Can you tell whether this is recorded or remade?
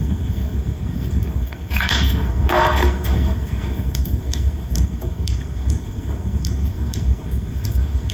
remade